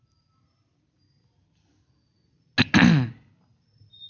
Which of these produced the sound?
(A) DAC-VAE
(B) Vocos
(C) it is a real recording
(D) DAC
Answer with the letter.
C